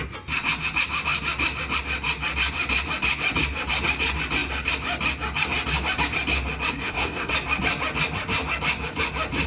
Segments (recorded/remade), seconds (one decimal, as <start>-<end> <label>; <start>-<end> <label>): 0.0-6.7 recorded; 6.7-7.3 remade; 7.3-9.5 recorded